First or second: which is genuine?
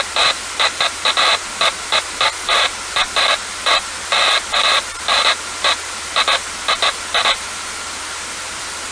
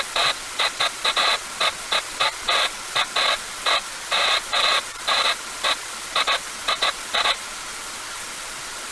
first